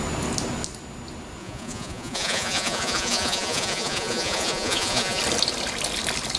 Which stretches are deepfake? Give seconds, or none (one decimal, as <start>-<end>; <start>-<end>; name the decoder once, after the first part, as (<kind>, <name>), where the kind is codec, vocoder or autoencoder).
1.4-5.2 (vocoder, Vocos)